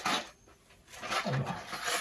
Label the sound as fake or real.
real